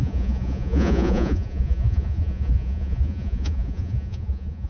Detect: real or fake fake